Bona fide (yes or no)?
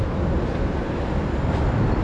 yes